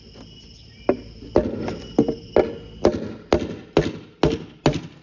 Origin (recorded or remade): recorded